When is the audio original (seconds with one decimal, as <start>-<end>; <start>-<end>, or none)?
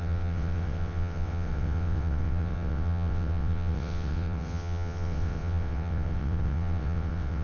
none